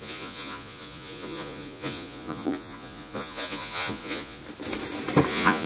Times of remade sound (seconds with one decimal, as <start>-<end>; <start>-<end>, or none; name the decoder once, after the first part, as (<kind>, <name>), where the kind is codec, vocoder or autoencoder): 0.0-4.4 (vocoder, Vocos); 5.3-5.7